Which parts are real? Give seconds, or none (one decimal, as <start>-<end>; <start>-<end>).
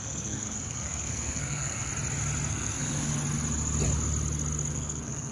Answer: 1.9-2.5; 3.1-4.7